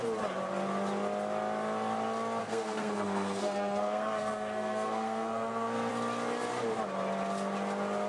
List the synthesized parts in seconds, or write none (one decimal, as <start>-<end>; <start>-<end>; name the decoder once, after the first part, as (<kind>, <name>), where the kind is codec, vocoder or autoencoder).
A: 2.4-5.9 (codec, SNAC)